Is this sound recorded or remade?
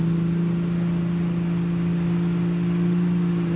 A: recorded